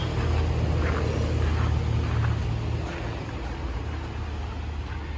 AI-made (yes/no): no